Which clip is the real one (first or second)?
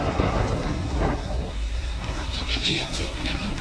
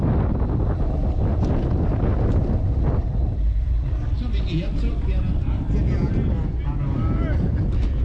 second